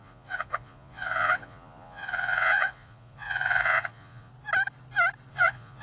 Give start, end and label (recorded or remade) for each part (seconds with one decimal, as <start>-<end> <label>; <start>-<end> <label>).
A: 0.0-4.3 remade; 4.3-5.3 recorded; 5.3-5.8 remade